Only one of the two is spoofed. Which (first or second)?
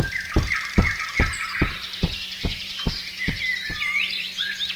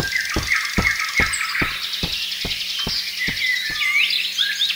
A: first